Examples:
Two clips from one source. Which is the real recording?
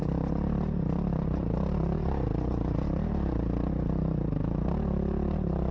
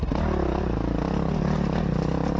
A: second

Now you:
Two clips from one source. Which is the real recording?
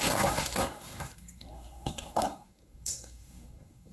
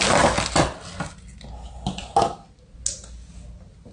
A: second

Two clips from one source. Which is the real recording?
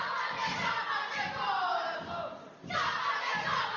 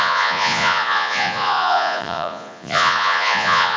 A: first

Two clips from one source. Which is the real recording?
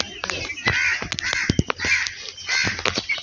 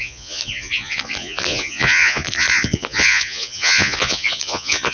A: first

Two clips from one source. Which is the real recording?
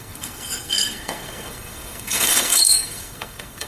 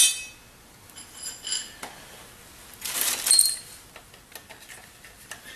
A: second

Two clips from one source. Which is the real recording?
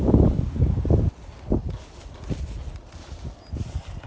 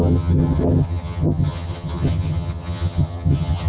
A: first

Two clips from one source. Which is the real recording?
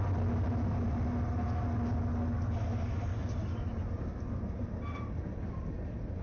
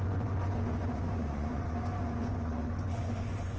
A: first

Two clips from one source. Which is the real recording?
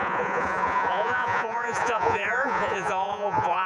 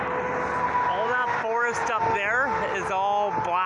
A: second